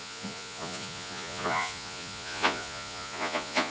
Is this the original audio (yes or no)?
no